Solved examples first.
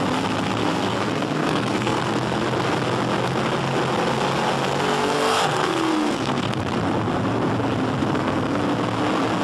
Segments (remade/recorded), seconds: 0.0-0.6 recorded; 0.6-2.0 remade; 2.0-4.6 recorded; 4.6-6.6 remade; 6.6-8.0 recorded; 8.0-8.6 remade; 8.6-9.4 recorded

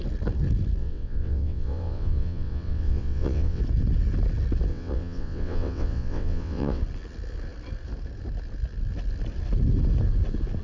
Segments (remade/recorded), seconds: 0.0-0.8 recorded; 0.8-3.6 remade; 3.6-4.7 recorded; 4.7-6.8 remade; 6.8-10.6 recorded

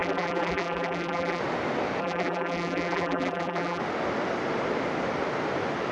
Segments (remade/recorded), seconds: 0.0-1.4 remade; 1.4-2.0 recorded; 2.0-3.8 remade; 3.8-5.9 recorded

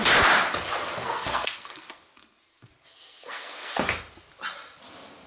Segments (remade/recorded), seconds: 0.0-1.0 recorded; 1.0-2.0 remade; 2.0-2.5 recorded; 2.5-3.8 remade; 3.8-5.3 recorded

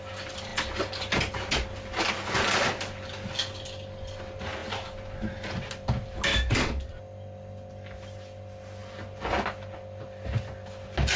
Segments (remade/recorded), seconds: 0.0-6.3 recorded; 6.3-6.9 remade; 6.9-11.2 recorded

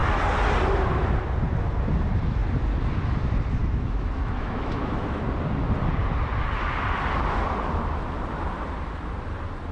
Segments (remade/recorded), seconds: 0.0-3.6 recorded; 3.6-5.2 remade; 5.2-9.7 recorded